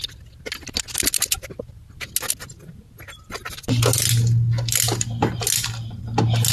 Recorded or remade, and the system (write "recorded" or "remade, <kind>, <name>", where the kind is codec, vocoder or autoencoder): recorded